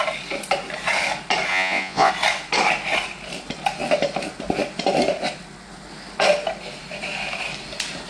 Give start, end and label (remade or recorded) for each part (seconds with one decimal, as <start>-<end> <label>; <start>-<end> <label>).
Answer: 0.0-1.5 recorded; 1.5-2.1 remade; 2.1-8.1 recorded